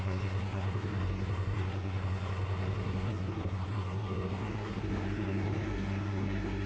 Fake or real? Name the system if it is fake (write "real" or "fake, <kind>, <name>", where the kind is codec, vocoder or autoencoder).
fake, codec, SNAC